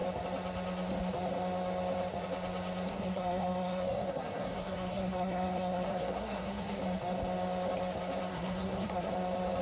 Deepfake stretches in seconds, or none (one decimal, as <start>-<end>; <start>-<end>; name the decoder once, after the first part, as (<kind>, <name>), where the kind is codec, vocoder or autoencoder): 2.9-6.8 (codec, SNAC); 8.3-9.1